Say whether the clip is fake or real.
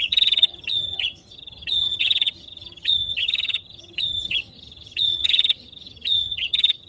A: fake